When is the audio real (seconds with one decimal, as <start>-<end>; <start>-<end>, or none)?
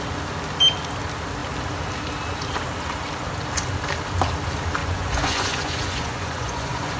0.0-4.8